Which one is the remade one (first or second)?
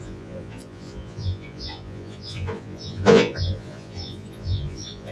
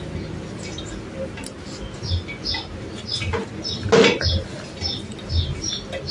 first